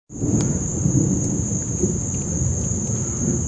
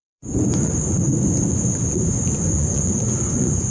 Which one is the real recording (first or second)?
first